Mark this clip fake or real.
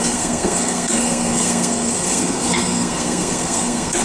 fake